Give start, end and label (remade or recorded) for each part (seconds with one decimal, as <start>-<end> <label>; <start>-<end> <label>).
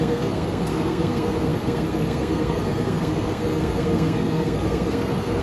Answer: 0.0-5.4 remade